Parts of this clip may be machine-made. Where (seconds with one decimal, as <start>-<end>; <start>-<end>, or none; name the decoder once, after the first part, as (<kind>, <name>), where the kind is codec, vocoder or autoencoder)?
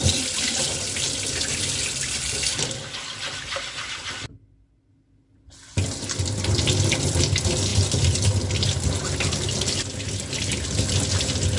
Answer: none